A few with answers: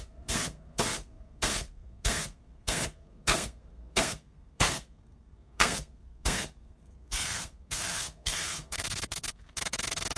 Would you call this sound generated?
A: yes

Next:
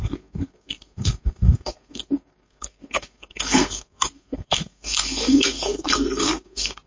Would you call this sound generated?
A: yes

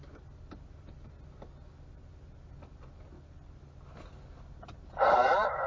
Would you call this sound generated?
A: no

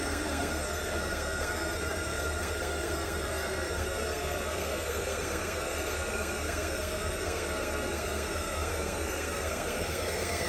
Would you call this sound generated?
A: yes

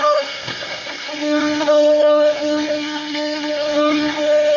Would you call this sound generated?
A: yes